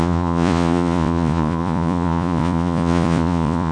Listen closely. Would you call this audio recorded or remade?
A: remade